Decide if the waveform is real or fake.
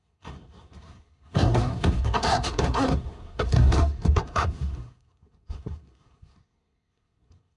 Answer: fake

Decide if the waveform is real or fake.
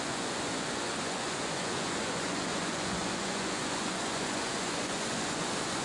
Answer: fake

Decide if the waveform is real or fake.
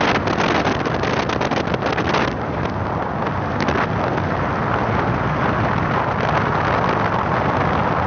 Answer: real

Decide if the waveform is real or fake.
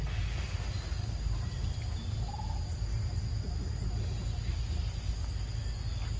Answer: real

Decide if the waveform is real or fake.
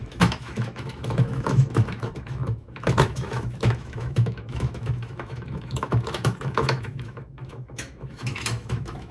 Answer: fake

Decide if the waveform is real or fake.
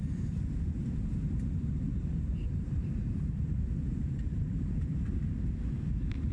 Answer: fake